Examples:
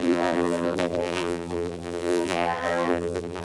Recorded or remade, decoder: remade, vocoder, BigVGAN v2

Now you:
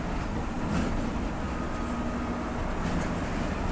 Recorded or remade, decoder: recorded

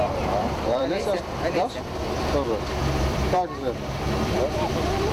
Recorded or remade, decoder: remade, vocoder, BigVGAN v2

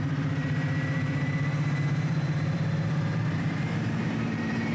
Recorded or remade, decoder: remade, vocoder, BigVGAN v2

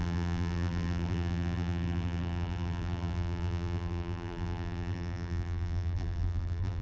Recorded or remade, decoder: remade, vocoder, BigVGAN v2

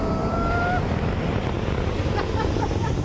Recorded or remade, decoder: remade, vocoder, BigVGAN v2